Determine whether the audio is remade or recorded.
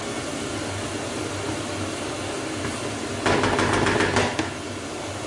recorded